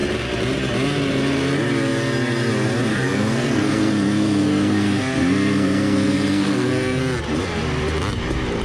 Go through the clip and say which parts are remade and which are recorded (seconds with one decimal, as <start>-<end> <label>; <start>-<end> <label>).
0.0-2.9 recorded; 2.9-7.0 remade; 7.0-8.6 recorded